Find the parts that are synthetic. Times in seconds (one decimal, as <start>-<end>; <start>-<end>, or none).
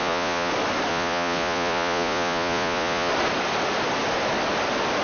0.0-0.5; 0.9-3.1